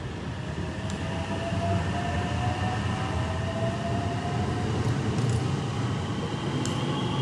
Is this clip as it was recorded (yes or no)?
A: yes